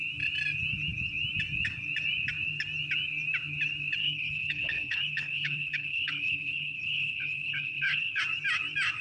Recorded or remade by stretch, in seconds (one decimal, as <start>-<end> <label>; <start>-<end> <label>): 0.0-4.0 recorded; 4.0-8.2 remade; 8.2-9.0 recorded